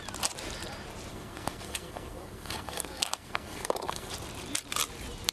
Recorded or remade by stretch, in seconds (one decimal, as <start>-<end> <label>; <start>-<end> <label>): 0.0-1.1 recorded; 1.1-4.1 remade; 4.1-5.3 recorded